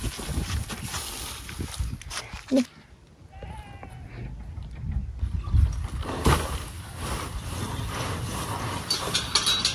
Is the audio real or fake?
real